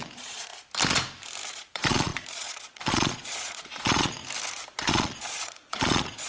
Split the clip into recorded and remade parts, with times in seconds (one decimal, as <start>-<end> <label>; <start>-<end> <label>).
0.0-0.5 remade; 0.5-1.5 recorded; 1.5-4.2 remade; 4.2-4.9 recorded; 4.9-6.3 remade